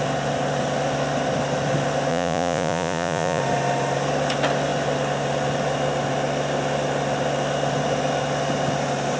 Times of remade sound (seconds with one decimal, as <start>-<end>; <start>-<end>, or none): 2.1-3.4

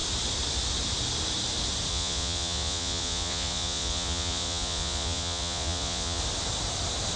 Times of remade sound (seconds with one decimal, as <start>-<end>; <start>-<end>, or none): 1.9-6.2

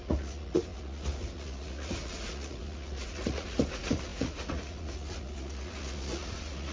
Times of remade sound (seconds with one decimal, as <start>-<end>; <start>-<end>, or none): 0.0-6.7

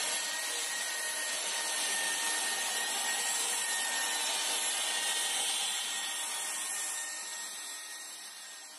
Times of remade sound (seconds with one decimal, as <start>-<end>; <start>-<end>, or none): none

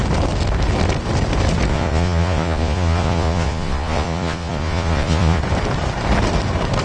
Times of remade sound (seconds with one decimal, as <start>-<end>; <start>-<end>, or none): 1.7-5.4

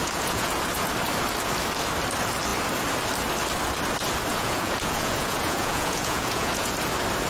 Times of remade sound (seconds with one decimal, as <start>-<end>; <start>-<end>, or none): 0.0-0.6; 4.3-6.7